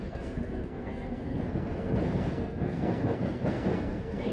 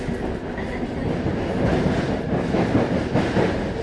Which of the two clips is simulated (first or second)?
first